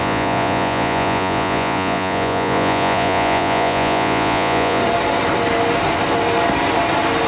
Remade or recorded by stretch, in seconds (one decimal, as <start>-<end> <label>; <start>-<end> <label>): 0.0-4.8 remade; 4.8-7.3 recorded